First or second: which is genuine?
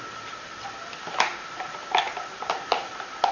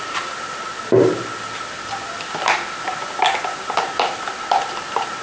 second